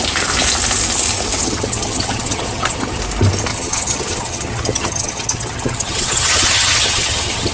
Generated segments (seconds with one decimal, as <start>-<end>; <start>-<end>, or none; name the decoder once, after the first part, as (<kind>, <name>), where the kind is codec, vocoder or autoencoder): 1.4-3.0 (vocoder, HiFi-GAN); 3.5-7.5

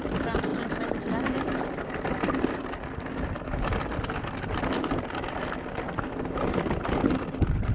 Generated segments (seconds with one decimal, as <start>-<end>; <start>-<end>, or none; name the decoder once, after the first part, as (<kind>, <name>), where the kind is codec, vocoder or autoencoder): none

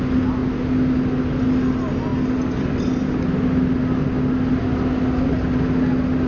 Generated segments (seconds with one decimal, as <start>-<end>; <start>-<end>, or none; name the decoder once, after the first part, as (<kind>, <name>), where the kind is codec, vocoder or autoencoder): none

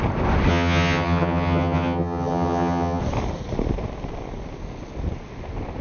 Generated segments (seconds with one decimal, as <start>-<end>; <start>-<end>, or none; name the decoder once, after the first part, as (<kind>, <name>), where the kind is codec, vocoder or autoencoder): 0.5-3.0 (vocoder, HiFi-GAN)

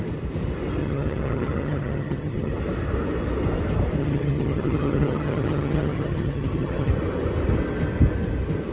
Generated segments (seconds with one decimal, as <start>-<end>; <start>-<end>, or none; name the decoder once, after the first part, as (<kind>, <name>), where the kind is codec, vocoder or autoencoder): 0.8-2.5 (vocoder, HiFi-GAN); 4.0-6.9